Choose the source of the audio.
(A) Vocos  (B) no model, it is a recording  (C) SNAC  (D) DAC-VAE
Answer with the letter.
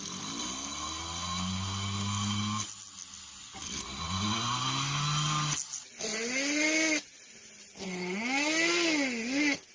B